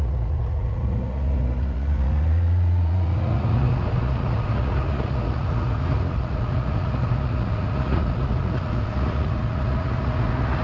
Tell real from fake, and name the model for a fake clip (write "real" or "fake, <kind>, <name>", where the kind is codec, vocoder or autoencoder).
fake, vocoder, Vocos